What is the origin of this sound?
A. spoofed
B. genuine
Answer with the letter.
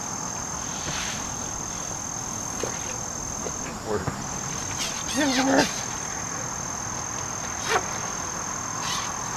B